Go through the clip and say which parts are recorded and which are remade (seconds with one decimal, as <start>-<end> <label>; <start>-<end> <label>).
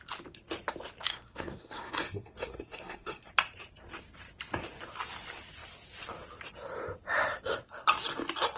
0.0-1.1 recorded; 1.1-3.3 remade; 3.3-8.6 recorded